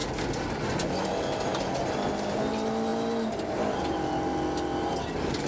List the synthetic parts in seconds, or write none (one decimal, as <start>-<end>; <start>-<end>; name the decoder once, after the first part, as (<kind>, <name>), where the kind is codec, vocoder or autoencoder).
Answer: none